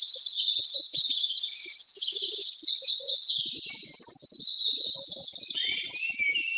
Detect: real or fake real